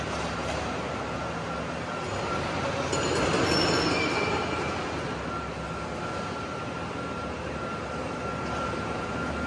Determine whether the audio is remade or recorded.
recorded